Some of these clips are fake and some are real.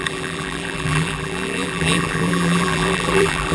fake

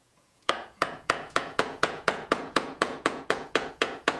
fake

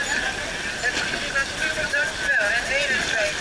real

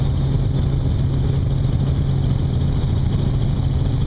real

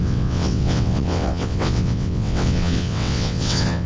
fake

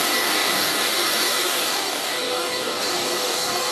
fake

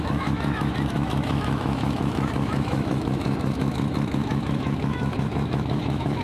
fake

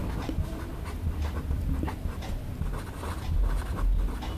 real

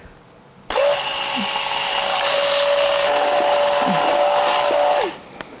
real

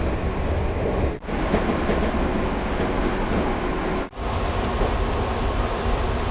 real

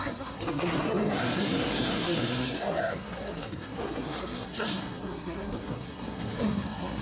fake